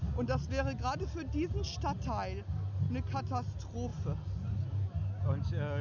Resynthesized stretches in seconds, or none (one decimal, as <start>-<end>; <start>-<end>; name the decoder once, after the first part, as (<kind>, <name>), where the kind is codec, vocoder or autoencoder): none